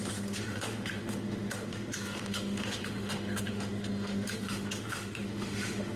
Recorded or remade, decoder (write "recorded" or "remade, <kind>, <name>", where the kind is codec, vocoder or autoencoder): remade, autoencoder, DAC-VAE